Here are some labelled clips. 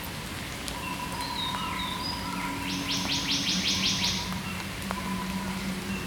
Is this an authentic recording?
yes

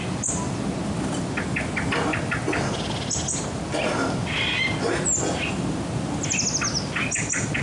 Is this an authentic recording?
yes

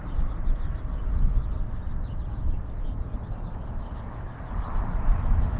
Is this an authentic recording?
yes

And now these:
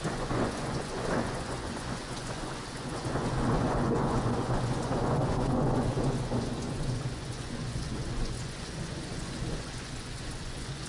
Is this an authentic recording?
no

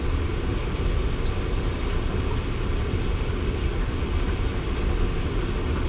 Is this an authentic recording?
yes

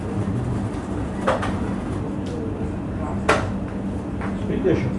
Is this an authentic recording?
yes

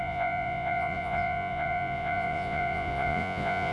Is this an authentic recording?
no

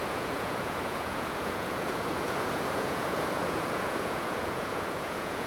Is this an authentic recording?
no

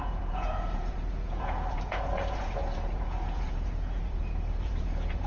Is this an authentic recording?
no